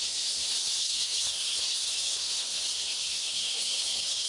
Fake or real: fake